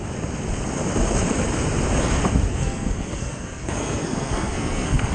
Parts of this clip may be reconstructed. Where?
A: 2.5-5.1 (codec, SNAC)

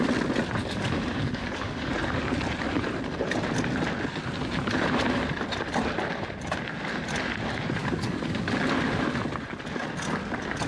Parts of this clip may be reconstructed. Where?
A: 0.6-1.9 (codec, DAC); 7.8-8.5

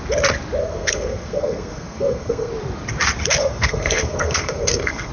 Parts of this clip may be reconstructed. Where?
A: 0.6-2.5 (codec, SNAC); 3.4-5.1

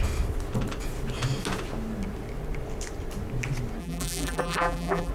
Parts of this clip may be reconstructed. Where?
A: 3.8-5.1 (vocoder, BigVGAN v2)